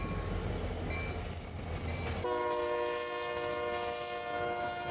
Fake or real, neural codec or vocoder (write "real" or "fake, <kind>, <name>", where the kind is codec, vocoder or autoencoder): real